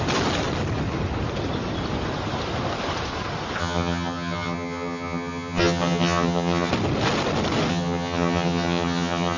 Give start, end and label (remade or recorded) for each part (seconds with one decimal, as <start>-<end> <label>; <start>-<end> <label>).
0.0-3.6 recorded; 3.6-6.7 remade; 6.7-7.7 recorded; 7.7-9.4 remade